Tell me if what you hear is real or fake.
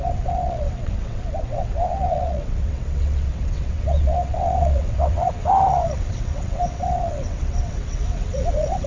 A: fake